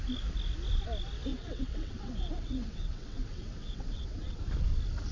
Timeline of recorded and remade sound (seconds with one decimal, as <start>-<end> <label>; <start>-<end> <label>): 0.0-1.3 recorded; 1.3-4.4 remade; 4.4-5.1 recorded